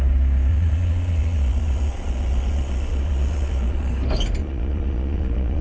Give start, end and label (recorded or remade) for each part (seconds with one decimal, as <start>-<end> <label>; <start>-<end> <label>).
0.0-0.5 recorded; 0.5-3.9 remade; 3.9-4.4 recorded; 4.4-5.6 remade